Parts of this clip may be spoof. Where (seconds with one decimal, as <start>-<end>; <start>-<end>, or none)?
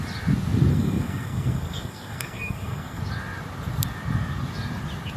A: 0.7-3.0